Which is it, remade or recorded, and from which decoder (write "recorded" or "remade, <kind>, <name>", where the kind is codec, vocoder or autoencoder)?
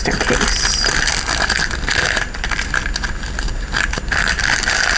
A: recorded